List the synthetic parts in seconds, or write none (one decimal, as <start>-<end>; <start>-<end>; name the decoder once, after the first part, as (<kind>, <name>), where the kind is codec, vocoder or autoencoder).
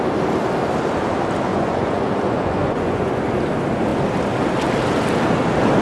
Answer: 1.5-3.2 (vocoder, Vocos)